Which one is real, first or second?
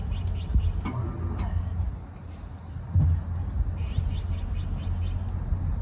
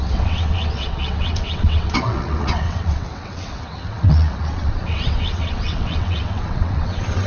first